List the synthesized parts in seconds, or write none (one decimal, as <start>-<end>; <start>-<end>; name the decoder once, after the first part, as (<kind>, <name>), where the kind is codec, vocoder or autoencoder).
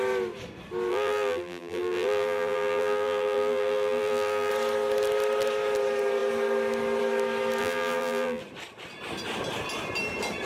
0.9-4.5 (vocoder, BigVGAN v2); 7.6-8.4